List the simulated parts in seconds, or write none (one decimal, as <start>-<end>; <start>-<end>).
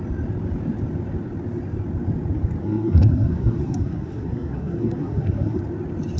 2.6-5.6